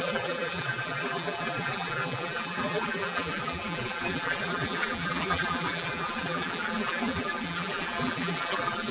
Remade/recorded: remade